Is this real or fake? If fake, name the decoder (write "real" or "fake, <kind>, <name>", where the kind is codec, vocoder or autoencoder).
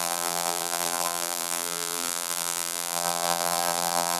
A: fake, vocoder, BigVGAN v2